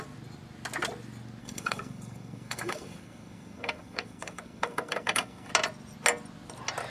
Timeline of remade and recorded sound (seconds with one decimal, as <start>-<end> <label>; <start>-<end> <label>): 0.0-1.4 recorded; 1.4-5.5 remade; 5.5-6.9 recorded